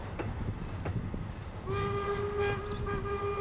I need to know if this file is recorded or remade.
recorded